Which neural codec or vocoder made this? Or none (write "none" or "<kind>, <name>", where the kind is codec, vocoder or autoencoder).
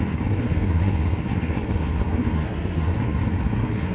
codec, SNAC